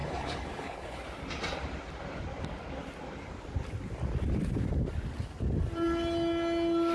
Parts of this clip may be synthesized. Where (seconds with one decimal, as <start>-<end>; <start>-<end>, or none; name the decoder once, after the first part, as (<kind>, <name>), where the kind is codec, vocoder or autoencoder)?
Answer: 0.0-1.0 (codec, HILCodec)